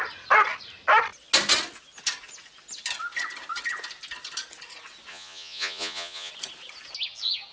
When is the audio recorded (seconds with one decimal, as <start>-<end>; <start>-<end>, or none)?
0.0-5.1; 6.3-7.5